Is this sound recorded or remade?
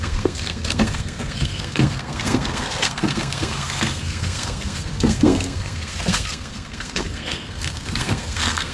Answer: remade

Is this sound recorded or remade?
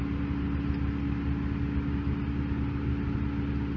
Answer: recorded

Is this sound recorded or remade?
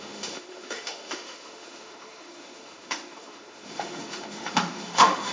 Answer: remade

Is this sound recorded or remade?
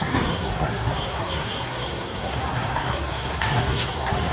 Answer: remade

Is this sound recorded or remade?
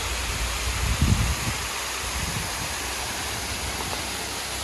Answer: recorded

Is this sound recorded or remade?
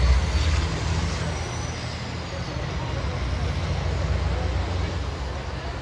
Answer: recorded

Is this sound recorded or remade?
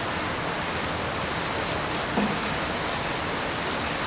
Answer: recorded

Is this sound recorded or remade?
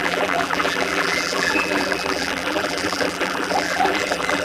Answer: remade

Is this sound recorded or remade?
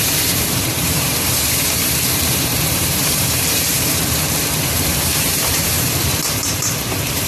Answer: remade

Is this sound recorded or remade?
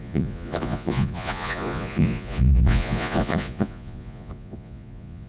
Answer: remade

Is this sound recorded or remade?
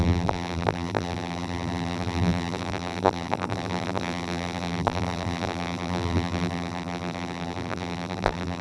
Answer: remade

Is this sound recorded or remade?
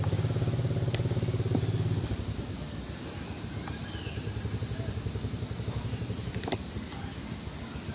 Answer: recorded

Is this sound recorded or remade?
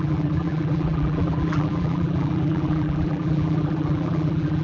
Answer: remade